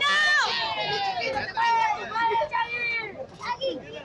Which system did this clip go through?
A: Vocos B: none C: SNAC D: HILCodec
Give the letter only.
B